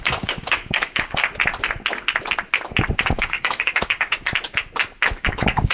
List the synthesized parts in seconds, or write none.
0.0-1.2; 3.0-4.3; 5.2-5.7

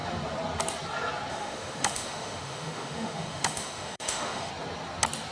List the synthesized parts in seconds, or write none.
1.3-4.5

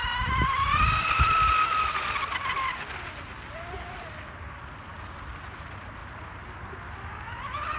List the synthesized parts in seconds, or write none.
none

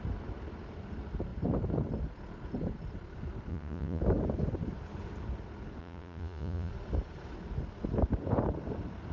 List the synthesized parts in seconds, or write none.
3.5-4.0; 5.8-6.7

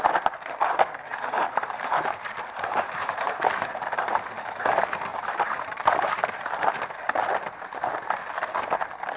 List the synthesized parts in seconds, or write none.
1.1-4.0; 5.1-6.3

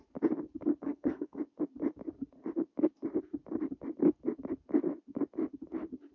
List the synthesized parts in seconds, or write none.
0.8-1.4